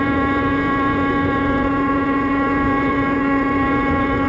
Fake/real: fake